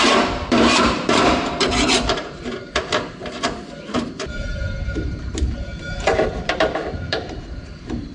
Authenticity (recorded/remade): remade